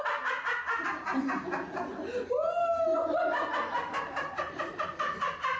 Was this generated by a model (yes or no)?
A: no